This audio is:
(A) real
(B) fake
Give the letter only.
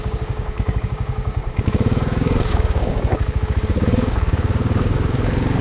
B